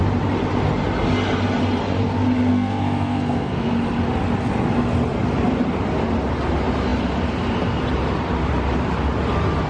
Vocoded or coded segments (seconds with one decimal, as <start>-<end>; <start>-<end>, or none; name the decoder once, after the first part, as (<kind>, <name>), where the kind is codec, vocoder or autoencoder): 2.5-3.7 (codec, SNAC)